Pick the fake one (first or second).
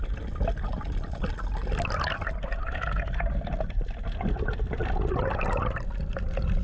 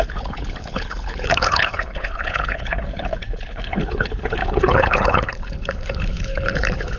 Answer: second